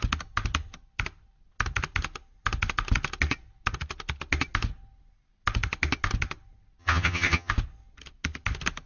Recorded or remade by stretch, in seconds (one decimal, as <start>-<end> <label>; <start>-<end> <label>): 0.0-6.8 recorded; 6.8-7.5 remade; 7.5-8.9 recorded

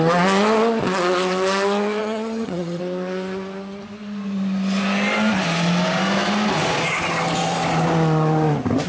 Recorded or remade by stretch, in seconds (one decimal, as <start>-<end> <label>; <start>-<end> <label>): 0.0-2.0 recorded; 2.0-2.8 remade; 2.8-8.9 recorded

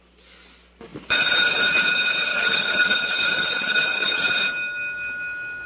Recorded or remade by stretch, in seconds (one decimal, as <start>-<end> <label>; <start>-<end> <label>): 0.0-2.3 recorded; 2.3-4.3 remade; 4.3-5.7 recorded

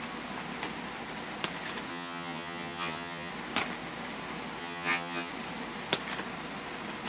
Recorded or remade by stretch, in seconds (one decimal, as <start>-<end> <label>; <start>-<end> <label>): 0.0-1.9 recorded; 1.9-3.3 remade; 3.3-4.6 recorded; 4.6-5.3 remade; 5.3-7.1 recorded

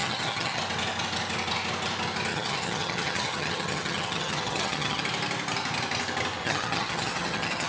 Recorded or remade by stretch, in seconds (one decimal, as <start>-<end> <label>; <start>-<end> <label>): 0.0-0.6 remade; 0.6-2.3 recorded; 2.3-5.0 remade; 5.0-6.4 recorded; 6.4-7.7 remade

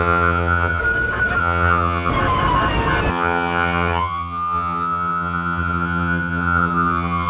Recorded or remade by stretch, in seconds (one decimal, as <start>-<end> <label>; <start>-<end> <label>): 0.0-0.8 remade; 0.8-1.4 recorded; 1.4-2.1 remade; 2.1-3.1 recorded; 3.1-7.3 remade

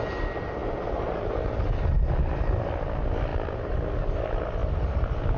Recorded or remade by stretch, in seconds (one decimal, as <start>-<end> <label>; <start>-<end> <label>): 0.0-5.4 recorded

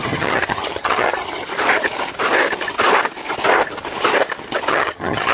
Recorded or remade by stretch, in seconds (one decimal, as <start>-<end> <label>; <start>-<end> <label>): 0.0-1.5 remade; 1.5-4.7 recorded; 4.7-5.3 remade